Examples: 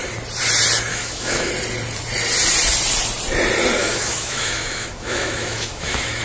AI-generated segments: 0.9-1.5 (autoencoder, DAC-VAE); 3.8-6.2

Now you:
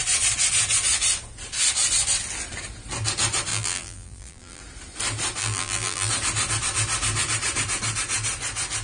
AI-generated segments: 3.5-4.6 (vocoder, BigVGAN v2); 5.4-6.1

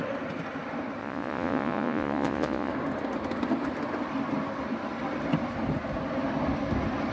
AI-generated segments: 1.0-2.7 (vocoder, Vocos)

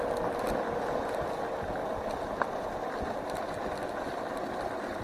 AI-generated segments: none

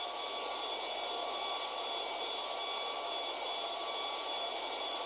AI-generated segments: none

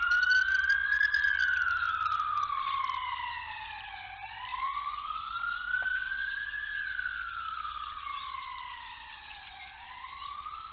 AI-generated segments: 0.8-1.4 (vocoder, Vocos); 4.5-5.3; 5.9-6.8; 8.7-9.6